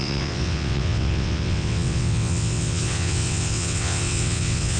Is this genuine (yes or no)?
no